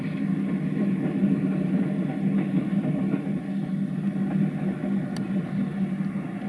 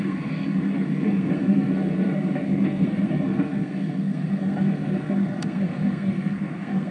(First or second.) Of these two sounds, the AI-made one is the second